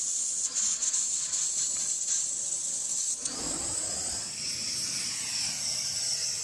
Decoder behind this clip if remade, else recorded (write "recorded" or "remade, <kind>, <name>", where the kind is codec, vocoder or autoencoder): recorded